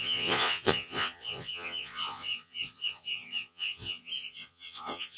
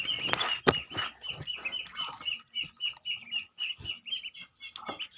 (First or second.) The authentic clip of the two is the second